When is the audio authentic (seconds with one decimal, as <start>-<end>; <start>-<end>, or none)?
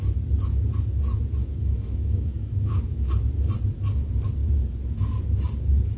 0.0-1.4; 3.1-6.0